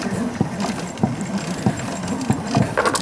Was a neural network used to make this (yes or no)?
no